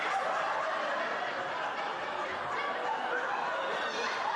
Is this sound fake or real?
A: real